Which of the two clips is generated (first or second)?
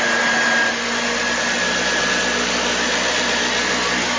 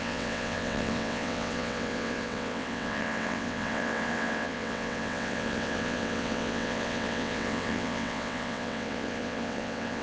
second